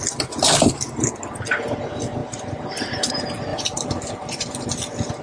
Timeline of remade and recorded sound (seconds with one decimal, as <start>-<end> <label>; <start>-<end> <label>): 0.0-2.2 recorded; 2.2-3.1 remade; 3.1-3.5 recorded; 3.5-4.7 remade; 4.7-5.2 recorded